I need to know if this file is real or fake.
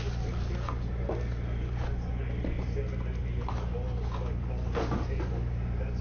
real